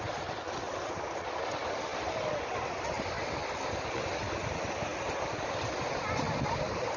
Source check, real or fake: real